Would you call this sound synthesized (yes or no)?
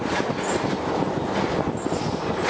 no